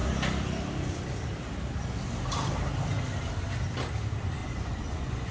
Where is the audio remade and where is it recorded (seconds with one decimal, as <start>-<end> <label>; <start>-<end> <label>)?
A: 0.0-4.4 recorded; 4.4-5.3 remade